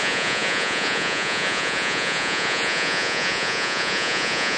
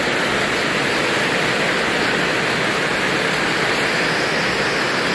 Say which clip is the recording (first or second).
second